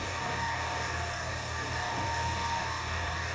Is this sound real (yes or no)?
no